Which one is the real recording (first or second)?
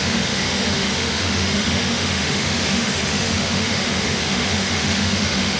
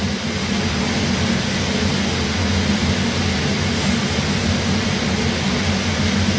second